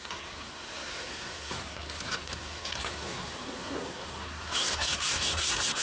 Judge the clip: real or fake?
fake